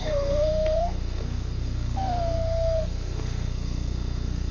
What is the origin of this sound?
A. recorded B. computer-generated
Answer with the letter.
B